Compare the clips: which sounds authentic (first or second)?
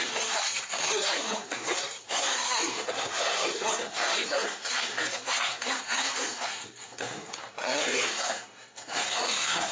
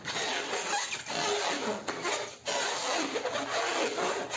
second